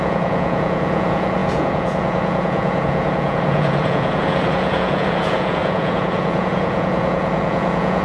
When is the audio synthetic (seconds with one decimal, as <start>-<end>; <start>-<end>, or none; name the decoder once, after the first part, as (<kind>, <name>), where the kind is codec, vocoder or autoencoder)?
0.0-8.0 (vocoder, Vocos)